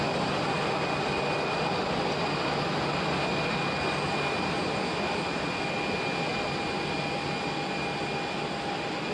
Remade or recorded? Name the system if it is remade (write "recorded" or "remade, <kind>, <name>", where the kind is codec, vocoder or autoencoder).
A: recorded